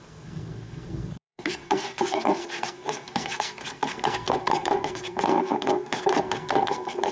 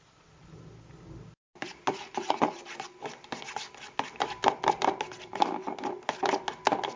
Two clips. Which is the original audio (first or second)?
second